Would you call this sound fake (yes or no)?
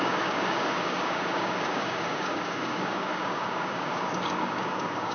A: yes